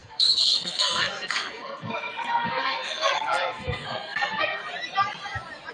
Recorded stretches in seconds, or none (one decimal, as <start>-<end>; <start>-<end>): 4.6-5.7